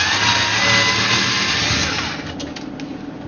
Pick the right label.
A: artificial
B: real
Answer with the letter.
B